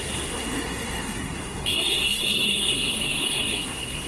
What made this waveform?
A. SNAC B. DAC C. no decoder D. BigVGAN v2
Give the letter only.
A